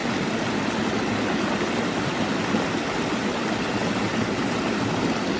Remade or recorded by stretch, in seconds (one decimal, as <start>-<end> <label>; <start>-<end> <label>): 0.0-5.4 recorded